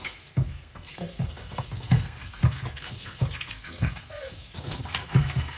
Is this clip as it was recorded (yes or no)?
no